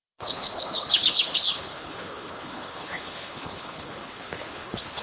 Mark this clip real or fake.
fake